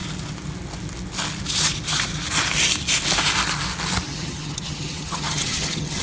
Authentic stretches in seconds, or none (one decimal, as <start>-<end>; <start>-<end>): 0.0-4.1